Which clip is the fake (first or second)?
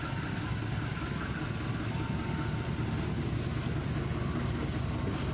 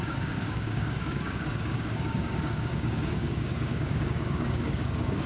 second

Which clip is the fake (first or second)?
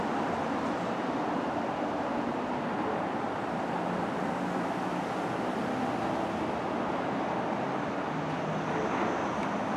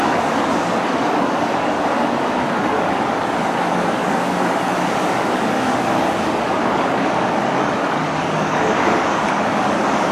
second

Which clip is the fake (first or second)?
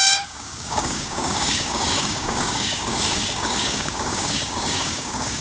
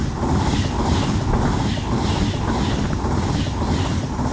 first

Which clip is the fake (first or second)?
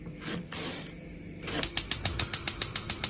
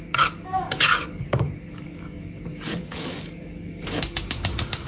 second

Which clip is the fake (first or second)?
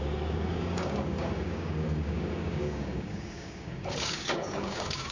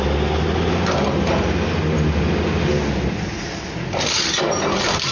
first